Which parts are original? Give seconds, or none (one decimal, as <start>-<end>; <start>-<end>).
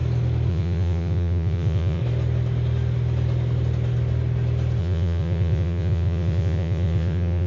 0.0-0.5; 2.0-4.8